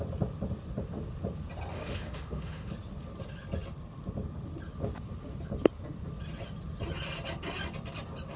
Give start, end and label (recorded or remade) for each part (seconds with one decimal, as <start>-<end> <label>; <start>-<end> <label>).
0.0-1.7 recorded; 1.7-2.7 remade; 2.7-8.4 recorded